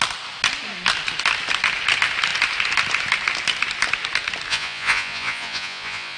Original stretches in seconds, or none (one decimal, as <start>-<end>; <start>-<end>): 0.0-4.5